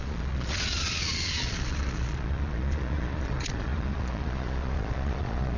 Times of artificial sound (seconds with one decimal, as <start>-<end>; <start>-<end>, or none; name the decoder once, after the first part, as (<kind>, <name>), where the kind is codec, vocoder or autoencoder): 0.0-5.6 (vocoder, Vocos)